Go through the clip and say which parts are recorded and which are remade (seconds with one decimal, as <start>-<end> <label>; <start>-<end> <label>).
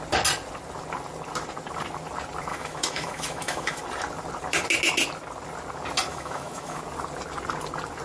0.0-2.5 recorded; 2.5-3.8 remade; 3.8-6.1 recorded; 6.1-6.8 remade; 6.8-8.0 recorded